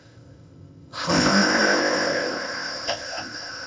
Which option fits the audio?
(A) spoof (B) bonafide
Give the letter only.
A